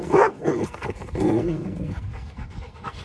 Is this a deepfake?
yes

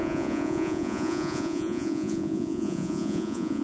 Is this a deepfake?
yes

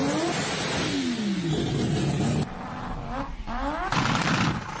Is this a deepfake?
no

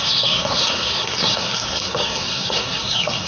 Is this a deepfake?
yes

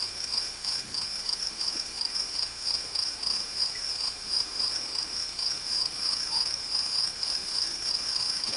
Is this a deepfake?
yes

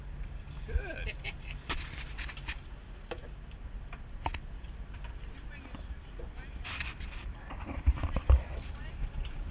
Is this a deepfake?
yes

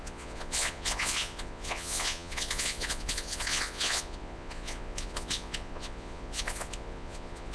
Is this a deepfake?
yes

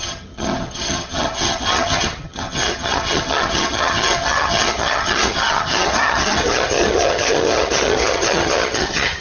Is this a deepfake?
yes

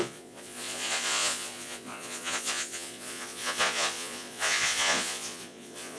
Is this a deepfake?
yes